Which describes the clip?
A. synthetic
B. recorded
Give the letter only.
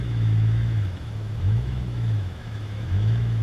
A